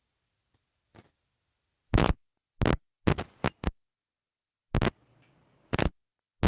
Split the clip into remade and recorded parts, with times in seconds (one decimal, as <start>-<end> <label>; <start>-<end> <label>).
0.0-6.5 recorded